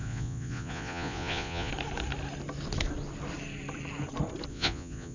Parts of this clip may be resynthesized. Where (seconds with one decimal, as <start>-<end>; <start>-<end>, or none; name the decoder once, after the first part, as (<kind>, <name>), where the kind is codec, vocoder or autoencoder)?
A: 0.0-1.7 (vocoder, Vocos); 4.5-5.1

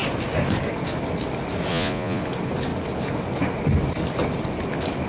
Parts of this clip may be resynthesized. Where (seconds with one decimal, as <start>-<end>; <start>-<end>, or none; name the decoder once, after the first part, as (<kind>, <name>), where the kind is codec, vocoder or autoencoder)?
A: 1.7-2.2 (vocoder, Vocos)